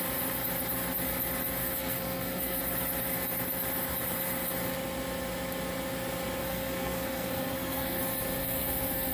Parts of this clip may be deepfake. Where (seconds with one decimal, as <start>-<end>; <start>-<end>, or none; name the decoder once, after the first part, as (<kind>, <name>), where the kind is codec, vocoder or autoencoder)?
1.6-2.6 (codec, SNAC); 6.4-8.0; 8.4-9.1